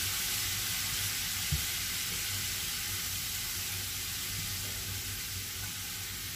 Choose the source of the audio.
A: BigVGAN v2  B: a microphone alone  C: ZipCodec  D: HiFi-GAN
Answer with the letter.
B